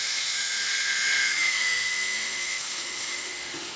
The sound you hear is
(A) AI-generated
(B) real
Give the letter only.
A